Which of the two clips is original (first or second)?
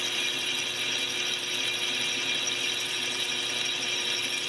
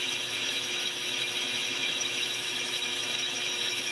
first